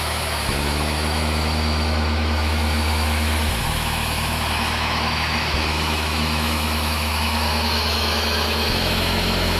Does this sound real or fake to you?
fake